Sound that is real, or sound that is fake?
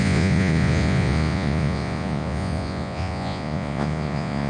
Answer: fake